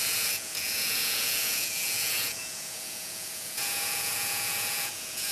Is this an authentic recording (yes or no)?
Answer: no